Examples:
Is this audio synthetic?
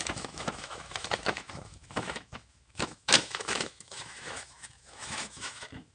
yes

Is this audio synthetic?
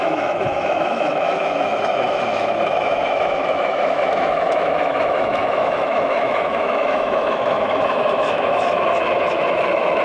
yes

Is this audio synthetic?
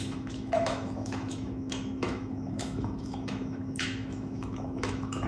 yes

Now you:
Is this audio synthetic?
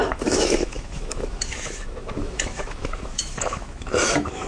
yes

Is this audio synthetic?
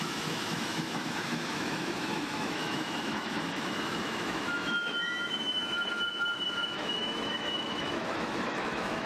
yes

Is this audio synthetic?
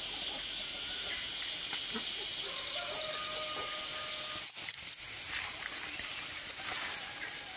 no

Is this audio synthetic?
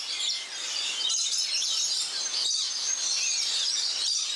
no